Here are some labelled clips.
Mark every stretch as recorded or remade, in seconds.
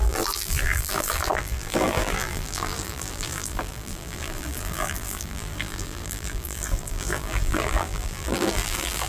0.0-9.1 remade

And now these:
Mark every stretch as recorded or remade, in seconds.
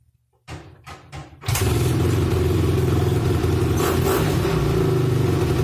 0.0-1.2 recorded; 1.2-4.6 remade; 4.6-5.6 recorded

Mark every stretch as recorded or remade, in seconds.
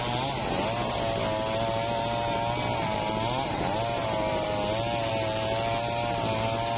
0.0-6.8 recorded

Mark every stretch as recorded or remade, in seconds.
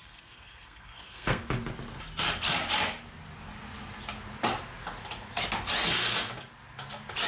0.0-1.4 remade; 1.4-7.3 recorded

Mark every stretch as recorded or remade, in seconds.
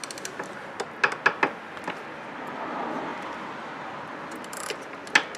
0.0-5.4 recorded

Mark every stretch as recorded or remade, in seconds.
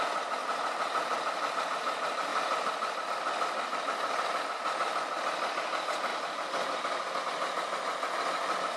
0.0-2.3 recorded; 2.3-3.1 remade; 3.1-6.1 recorded; 6.1-7.2 remade; 7.2-8.8 recorded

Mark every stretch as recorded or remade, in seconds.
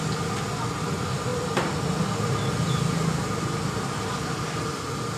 0.0-5.2 recorded